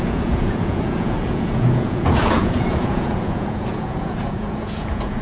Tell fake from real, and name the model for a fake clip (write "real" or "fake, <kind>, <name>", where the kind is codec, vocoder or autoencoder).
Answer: fake, vocoder, Vocos